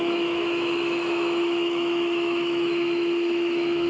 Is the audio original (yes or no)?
no